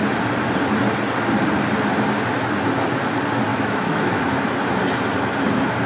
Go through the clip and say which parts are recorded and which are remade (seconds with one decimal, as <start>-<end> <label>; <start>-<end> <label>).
0.0-3.5 recorded; 3.5-4.2 remade; 4.2-5.9 recorded